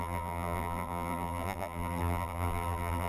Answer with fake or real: fake